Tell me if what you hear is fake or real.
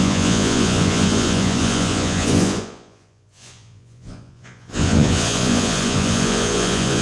fake